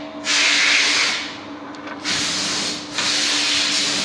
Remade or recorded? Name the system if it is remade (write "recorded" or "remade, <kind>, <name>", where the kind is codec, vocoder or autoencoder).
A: recorded